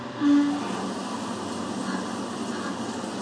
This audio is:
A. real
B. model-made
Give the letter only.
A